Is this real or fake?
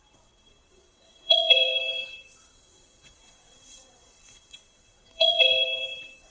fake